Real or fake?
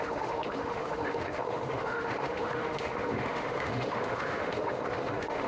fake